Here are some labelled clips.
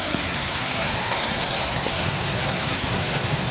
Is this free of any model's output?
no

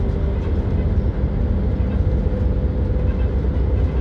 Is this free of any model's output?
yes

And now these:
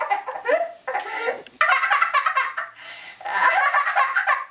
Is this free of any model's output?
yes